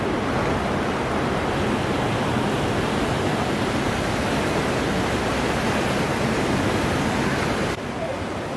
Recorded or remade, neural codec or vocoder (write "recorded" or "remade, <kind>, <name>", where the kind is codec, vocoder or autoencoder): recorded